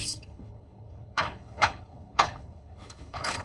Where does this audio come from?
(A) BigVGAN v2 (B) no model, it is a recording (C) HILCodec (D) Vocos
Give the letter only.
C